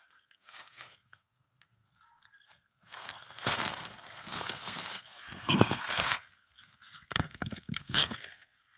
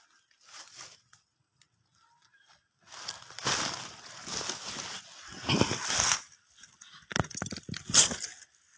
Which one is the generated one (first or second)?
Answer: first